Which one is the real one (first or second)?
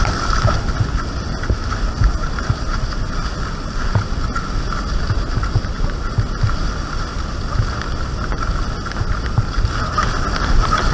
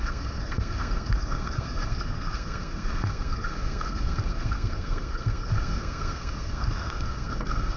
first